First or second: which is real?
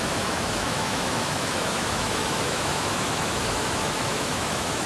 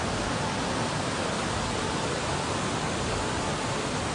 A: second